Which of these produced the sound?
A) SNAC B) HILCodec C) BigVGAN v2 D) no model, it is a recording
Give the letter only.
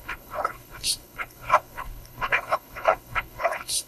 B